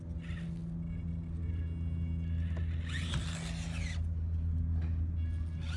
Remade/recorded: recorded